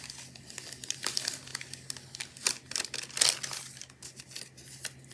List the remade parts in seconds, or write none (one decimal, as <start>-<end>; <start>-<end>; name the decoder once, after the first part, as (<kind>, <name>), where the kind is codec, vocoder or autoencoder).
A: none